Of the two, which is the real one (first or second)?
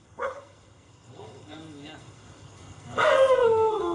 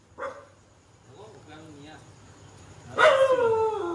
second